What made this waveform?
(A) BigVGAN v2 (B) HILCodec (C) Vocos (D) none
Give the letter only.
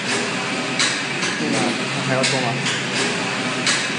D